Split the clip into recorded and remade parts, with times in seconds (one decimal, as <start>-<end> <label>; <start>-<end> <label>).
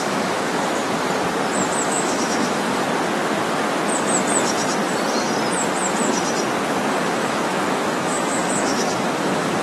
0.0-0.8 remade; 0.8-1.9 recorded; 1.9-2.8 remade; 2.8-6.9 recorded; 6.9-9.6 remade